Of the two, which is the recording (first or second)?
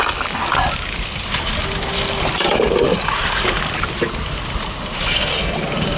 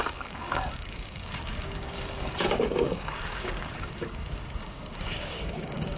first